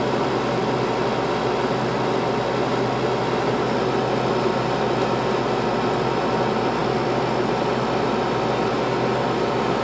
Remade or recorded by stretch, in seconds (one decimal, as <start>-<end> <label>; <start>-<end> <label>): 0.0-9.8 recorded